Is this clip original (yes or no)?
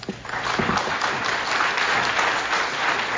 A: yes